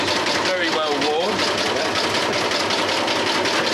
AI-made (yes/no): no